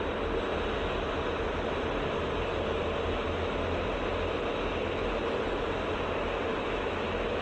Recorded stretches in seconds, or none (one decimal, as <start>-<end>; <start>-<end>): 0.0-6.5